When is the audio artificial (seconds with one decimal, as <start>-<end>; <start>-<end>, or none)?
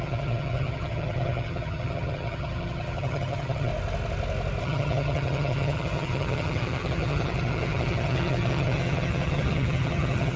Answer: 0.0-3.7; 4.6-10.4